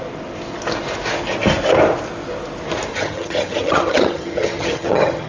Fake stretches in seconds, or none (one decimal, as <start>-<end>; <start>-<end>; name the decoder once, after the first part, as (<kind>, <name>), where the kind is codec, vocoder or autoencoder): 2.9-5.3 (vocoder, HiFi-GAN)